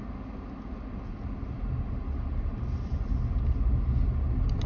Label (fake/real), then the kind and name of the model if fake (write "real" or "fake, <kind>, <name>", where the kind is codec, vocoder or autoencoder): real